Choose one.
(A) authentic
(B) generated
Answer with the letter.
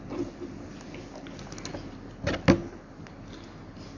A